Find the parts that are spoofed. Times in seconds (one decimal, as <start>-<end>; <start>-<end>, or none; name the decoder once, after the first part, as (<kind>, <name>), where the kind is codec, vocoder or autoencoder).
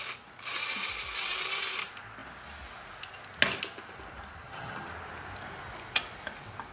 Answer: 4.4-4.9 (vocoder, HiFi-GAN)